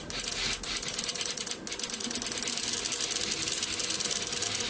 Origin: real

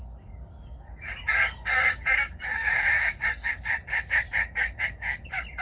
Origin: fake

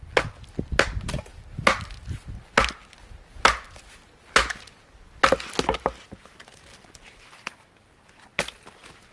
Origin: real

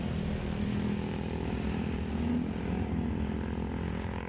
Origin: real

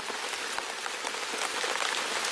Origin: real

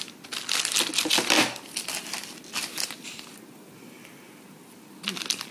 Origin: real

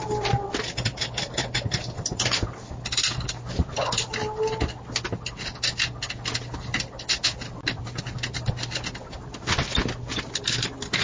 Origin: real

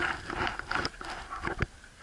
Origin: real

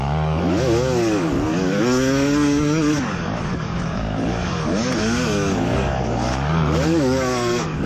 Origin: fake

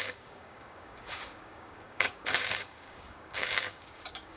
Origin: fake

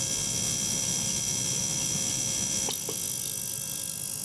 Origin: real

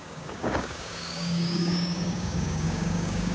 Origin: fake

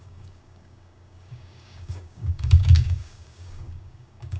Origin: fake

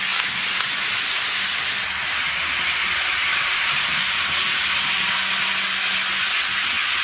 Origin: real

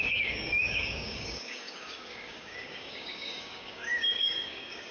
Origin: fake